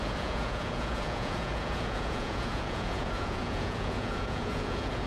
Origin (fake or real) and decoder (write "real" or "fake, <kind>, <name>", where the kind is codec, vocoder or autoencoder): fake, vocoder, Vocos